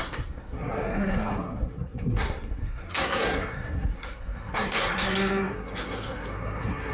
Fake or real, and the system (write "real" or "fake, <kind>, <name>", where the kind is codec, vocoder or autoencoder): fake, codec, SNAC